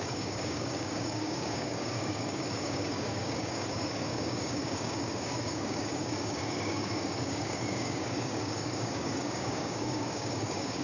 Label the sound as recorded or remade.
remade